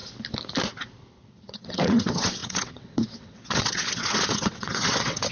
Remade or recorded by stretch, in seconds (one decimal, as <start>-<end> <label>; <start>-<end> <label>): 0.0-1.2 recorded; 1.2-5.3 remade